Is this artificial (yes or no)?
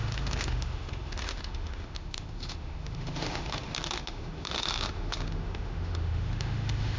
yes